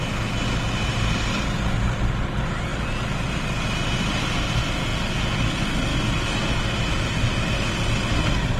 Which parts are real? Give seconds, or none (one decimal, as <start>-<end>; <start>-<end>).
0.0-8.6